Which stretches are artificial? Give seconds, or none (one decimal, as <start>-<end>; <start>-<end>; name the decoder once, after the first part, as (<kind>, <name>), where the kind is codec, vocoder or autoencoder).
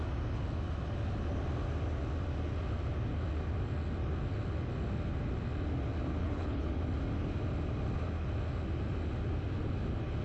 6.2-6.7 (codec, HILCodec)